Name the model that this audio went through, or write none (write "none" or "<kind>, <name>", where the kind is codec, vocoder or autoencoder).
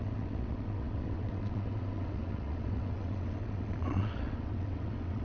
vocoder, WaveNeXt